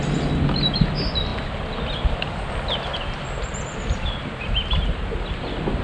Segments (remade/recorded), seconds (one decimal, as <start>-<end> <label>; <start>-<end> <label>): 0.0-5.8 recorded